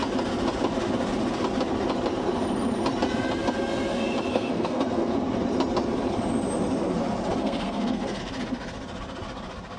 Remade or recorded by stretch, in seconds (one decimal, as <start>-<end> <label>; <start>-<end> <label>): 0.0-4.3 recorded; 4.3-5.1 remade; 5.1-7.4 recorded; 7.4-8.2 remade; 8.2-9.8 recorded